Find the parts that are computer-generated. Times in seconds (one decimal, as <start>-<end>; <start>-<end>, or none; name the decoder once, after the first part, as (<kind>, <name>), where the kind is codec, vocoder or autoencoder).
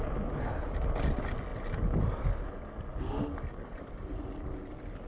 none